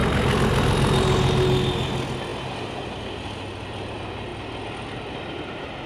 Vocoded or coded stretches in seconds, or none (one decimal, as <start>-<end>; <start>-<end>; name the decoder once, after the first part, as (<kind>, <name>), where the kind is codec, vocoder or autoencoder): none